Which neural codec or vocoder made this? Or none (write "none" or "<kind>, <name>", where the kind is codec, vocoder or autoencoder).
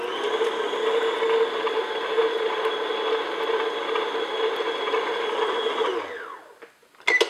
none